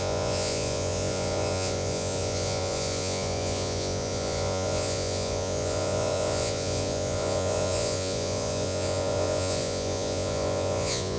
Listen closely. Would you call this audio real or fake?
fake